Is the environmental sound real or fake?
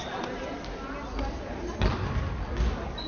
real